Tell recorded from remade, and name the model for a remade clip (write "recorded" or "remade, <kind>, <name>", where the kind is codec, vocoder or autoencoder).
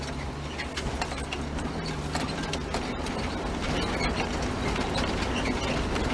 recorded